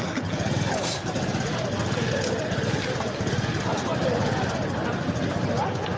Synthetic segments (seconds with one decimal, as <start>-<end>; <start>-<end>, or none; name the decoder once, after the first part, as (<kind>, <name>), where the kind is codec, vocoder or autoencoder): none